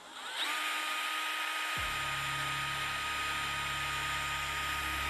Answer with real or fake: real